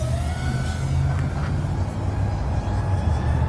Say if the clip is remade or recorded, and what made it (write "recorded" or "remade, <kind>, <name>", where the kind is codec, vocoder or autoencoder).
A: recorded